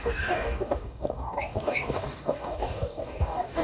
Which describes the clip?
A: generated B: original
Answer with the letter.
A